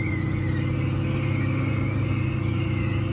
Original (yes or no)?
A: yes